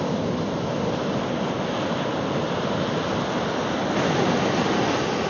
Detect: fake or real real